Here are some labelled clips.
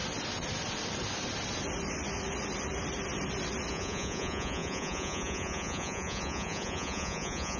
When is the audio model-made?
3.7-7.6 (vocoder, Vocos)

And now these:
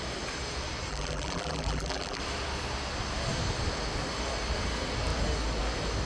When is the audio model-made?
0.9-2.2 (vocoder, BigVGAN v2)

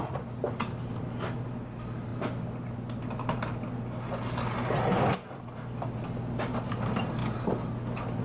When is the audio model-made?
none

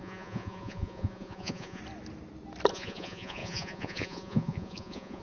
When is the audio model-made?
0.0-1.8 (vocoder, Vocos); 2.7-5.2